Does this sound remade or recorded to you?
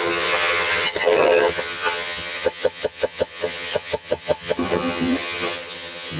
remade